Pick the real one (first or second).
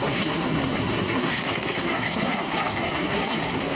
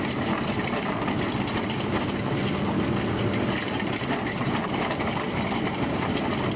second